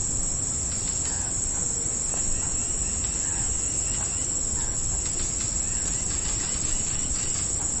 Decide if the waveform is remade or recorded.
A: recorded